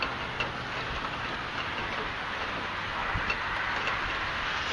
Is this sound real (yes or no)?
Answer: yes